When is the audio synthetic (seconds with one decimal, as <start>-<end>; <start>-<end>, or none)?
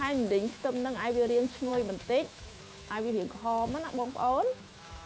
0.0-5.1